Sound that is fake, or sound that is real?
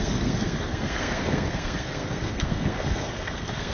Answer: fake